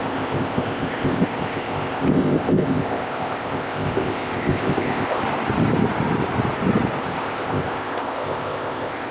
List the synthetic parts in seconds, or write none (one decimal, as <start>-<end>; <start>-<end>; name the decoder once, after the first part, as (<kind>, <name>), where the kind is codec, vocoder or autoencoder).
0.0-5.2 (codec, ZipCodec); 7.0-9.1